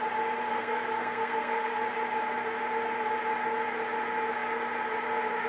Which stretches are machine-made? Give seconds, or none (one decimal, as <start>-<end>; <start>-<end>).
0.5-1.8